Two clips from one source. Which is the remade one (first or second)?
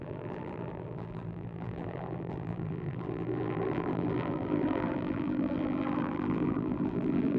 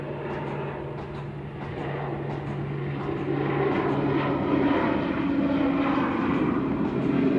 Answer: first